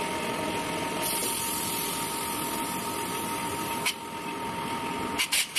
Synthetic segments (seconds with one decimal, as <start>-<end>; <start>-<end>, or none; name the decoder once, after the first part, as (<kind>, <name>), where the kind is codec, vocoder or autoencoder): none